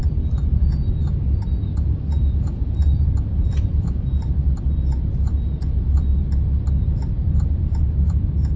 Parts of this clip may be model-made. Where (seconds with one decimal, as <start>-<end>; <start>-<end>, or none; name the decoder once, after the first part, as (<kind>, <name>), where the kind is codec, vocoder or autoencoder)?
0.0-0.7 (vocoder, BigVGAN v2); 3.3-4.0

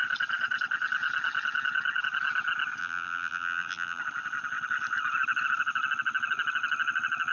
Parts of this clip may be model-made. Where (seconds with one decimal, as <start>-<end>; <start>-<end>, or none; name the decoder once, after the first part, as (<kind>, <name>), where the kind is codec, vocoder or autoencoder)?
2.8-4.0 (vocoder, BigVGAN v2)

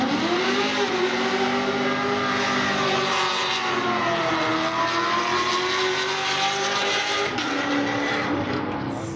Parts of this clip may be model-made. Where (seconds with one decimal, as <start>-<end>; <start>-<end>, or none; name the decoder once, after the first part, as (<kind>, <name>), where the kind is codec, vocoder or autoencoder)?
none

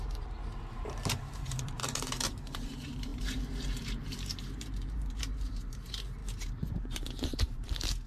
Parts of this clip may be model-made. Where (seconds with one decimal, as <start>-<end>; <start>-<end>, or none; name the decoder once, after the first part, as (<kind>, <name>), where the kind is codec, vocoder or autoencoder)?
0.0-6.2 (vocoder, BigVGAN v2); 6.7-8.1

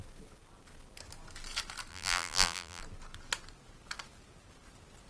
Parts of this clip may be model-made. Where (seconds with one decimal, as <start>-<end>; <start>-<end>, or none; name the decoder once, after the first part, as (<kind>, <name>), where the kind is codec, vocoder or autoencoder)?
1.9-2.8 (vocoder, BigVGAN v2)